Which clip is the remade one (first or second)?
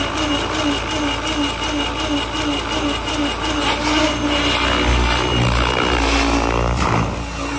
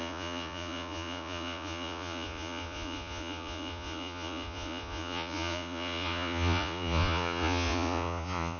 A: second